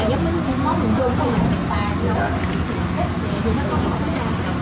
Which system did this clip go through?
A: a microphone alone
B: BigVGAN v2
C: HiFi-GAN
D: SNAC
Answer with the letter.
A